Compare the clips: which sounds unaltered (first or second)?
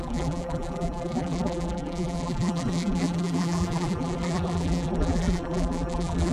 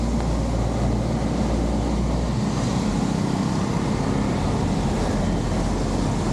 second